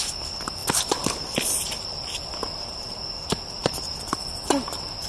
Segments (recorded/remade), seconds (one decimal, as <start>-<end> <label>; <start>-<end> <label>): 0.0-0.6 recorded; 0.6-3.7 remade; 3.7-5.1 recorded